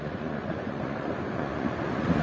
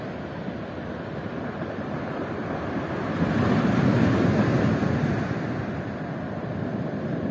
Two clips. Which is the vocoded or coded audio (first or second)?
first